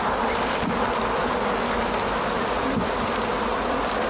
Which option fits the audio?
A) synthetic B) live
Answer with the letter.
B